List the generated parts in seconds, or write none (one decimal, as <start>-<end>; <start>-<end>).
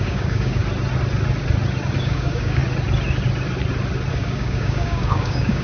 0.0-0.6; 2.0-2.6; 4.1-5.6